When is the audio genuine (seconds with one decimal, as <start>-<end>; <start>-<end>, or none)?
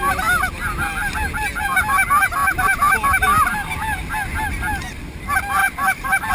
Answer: 0.0-2.4; 2.9-5.6